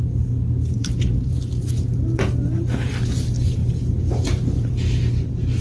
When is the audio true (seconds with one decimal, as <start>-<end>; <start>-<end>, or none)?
0.0-0.8; 1.5-3.6; 4.7-5.6